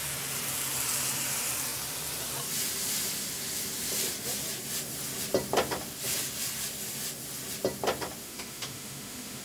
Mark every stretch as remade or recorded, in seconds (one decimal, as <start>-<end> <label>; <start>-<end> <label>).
0.0-8.2 recorded; 8.2-9.4 remade